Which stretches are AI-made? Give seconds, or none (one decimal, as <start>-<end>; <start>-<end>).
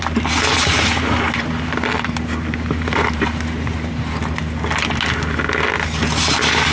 0.5-4.4